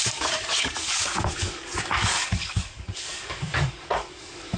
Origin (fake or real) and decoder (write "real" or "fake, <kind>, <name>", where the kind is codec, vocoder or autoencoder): fake, codec, DAC